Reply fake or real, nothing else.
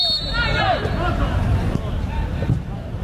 real